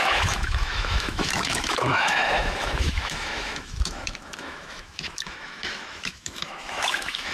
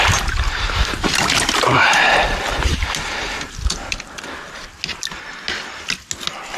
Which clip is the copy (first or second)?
first